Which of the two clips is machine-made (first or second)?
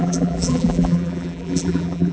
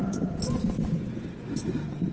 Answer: first